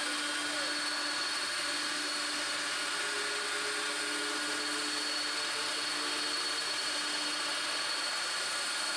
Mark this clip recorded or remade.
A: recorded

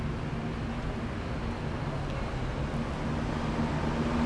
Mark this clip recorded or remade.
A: recorded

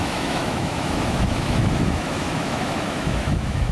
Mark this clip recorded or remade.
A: remade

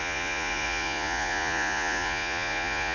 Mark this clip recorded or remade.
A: remade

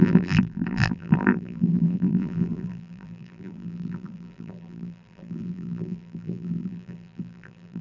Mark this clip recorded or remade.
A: remade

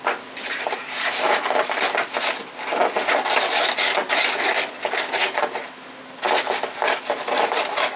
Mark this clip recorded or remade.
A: recorded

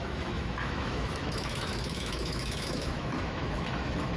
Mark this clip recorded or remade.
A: remade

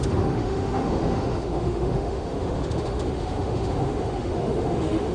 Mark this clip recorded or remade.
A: remade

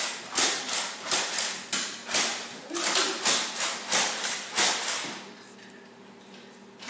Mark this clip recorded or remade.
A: recorded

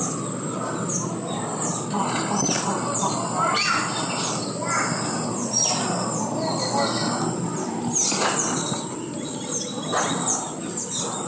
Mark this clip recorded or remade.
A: recorded